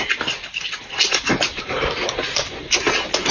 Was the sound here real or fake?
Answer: real